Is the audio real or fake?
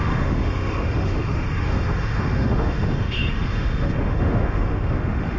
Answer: fake